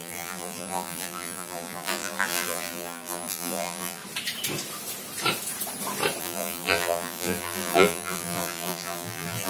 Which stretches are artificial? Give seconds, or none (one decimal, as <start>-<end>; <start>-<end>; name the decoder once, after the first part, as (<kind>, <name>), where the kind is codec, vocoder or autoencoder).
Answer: 0.0-4.0 (vocoder, BigVGAN v2); 6.2-9.5